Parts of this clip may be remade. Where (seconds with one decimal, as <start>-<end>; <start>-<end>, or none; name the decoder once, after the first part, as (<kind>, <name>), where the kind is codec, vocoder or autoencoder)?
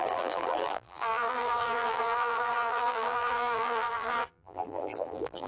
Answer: 0.0-5.5 (vocoder, BigVGAN v2)